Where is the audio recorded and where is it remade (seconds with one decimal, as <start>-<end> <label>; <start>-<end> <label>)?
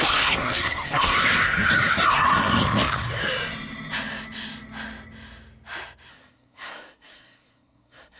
0.0-2.6 remade; 2.6-6.1 recorded; 6.1-8.2 remade